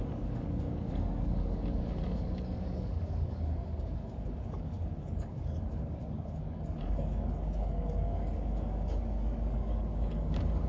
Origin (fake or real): fake